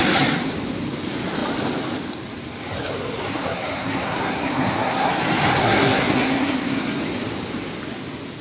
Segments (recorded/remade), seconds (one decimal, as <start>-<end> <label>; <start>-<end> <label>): 0.0-3.3 recorded; 3.3-5.1 remade; 5.1-5.6 recorded; 5.6-7.0 remade; 7.0-8.4 recorded